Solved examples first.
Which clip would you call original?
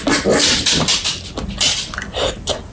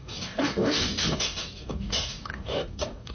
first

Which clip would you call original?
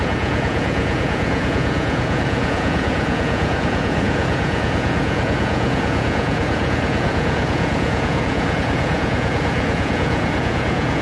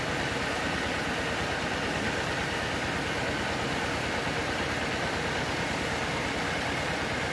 second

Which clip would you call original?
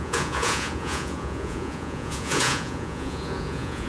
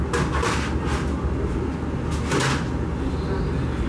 second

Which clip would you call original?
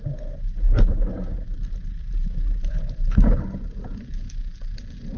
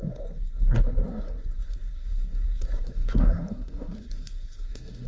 first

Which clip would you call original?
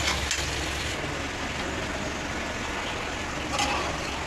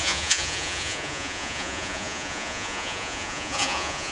first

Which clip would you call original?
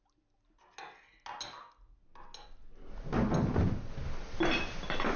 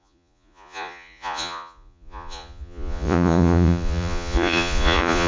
first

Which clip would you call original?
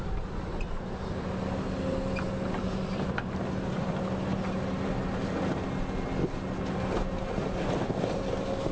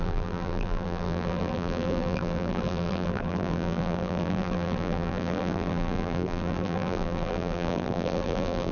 first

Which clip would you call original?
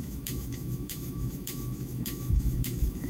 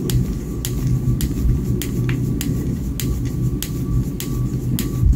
second